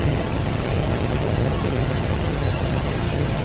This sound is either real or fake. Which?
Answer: fake